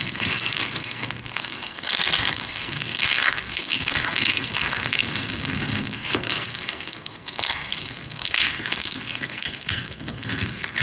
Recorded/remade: remade